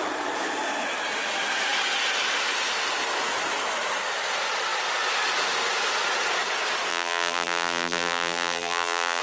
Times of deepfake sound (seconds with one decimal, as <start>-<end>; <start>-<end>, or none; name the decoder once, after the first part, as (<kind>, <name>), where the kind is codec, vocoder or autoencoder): 6.9-9.2 (vocoder, BigVGAN v2)